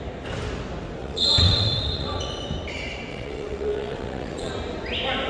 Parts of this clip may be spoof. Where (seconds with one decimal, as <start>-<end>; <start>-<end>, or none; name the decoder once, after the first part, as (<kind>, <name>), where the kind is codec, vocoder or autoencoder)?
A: 1.0-2.3 (vocoder, WaveNeXt); 3.1-4.5